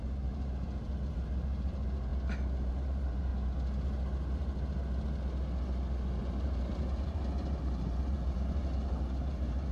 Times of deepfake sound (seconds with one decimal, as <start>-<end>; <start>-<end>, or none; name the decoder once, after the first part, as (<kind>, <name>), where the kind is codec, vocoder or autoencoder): 0.0-2.1 (vocoder, BigVGAN v2); 2.7-3.3; 6.2-9.7